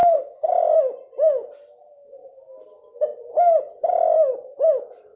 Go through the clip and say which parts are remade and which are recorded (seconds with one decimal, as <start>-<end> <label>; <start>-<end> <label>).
0.0-0.5 remade; 0.5-5.2 recorded